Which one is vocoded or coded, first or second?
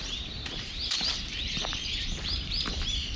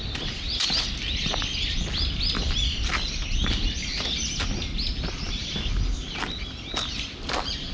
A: first